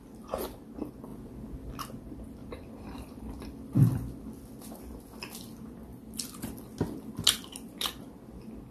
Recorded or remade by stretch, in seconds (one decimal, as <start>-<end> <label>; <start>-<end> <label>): 0.0-2.4 recorded; 2.4-4.4 remade; 4.4-5.9 recorded; 5.9-6.4 remade; 6.4-8.7 recorded